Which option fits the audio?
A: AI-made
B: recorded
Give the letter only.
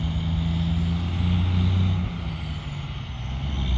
B